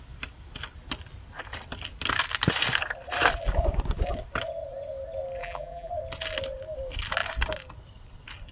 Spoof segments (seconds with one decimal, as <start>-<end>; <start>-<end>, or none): 5.4-5.9